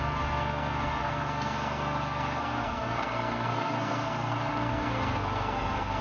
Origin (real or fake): fake